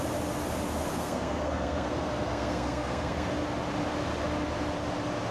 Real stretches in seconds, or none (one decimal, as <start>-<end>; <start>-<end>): 0.0-0.9; 3.3-5.3